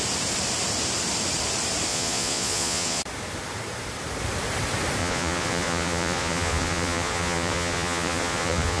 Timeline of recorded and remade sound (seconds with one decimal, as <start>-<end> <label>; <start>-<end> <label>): 0.0-1.9 recorded; 1.9-3.0 remade; 3.0-5.0 recorded; 5.0-8.8 remade